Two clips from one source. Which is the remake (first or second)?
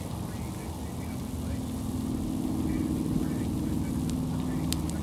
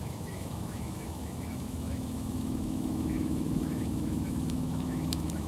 second